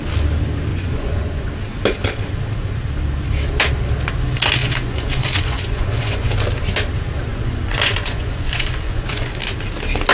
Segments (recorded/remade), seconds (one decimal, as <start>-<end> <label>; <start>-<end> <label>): 0.0-0.7 recorded; 0.7-1.5 remade; 1.5-4.6 recorded; 4.6-6.3 remade; 6.3-7.3 recorded; 7.3-9.3 remade; 9.3-10.1 recorded